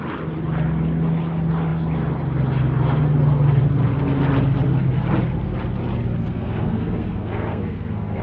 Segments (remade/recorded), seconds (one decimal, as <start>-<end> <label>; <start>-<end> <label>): 0.0-6.2 recorded; 6.2-8.2 remade